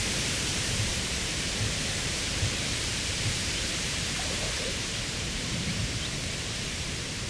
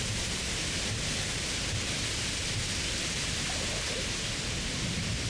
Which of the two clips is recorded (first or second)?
second